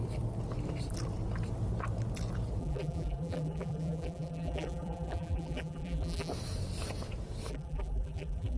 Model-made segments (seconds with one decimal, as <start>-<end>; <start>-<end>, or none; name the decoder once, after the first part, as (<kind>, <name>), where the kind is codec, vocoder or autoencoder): 2.6-6.3 (vocoder, BigVGAN v2); 7.5-8.6